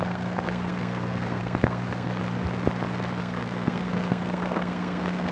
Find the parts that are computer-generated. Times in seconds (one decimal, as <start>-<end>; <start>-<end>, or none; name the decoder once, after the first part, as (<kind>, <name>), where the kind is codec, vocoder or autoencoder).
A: 0.0-2.2 (codec, SNAC); 3.2-5.3